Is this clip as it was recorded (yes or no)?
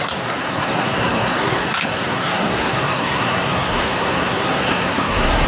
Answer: no